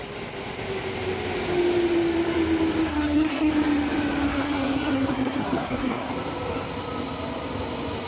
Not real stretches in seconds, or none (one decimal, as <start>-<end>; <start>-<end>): 2.9-3.5; 4.3-6.1